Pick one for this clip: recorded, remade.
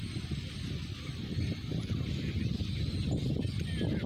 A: recorded